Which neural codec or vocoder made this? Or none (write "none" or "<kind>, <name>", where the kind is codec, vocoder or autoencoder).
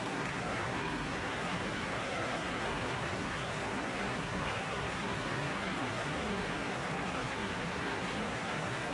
codec, SNAC